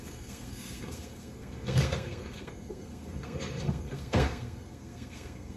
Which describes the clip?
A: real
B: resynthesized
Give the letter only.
B